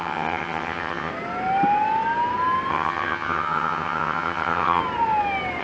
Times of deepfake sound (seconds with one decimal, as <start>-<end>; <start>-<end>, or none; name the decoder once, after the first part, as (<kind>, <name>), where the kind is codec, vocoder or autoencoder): 0.0-1.1 (vocoder, HiFi-GAN); 2.7-4.8